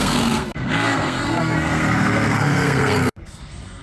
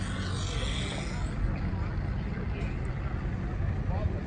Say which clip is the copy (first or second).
first